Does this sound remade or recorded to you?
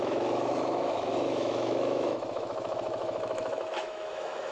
remade